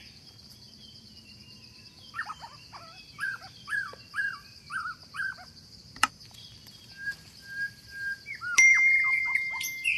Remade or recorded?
remade